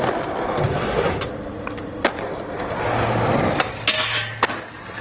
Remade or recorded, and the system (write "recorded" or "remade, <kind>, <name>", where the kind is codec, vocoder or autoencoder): recorded